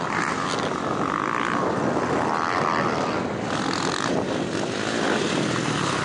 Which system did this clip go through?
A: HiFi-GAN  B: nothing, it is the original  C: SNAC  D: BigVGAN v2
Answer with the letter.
B